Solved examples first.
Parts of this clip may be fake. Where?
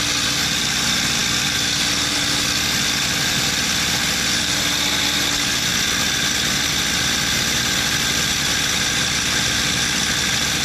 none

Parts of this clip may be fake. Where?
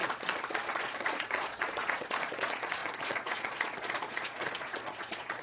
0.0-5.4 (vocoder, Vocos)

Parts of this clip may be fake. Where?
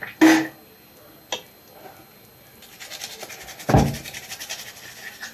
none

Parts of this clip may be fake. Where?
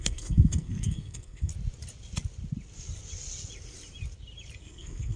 0.0-1.5 (codec, SNAC); 4.6-5.2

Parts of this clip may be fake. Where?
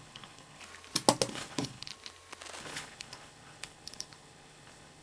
0.0-0.6 (codec, HILCodec); 1.3-1.9; 2.6-5.0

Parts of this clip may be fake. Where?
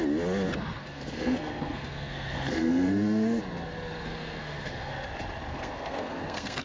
0.8-3.4 (codec, SNAC); 4.0-4.9; 5.5-6.6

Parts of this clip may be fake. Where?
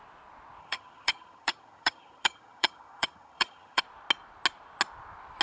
0.6-3.8 (vocoder, HiFi-GAN)